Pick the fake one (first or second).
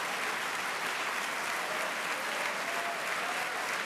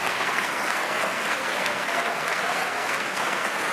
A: second